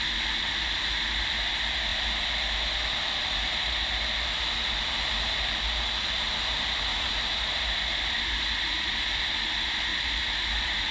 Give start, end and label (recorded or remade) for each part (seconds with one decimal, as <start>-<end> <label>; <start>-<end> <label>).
0.0-6.9 recorded; 6.9-7.6 remade; 7.6-9.9 recorded; 9.9-10.9 remade